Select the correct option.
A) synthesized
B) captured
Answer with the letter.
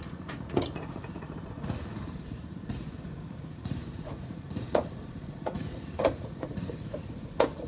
A